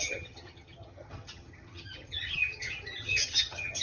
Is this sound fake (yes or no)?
yes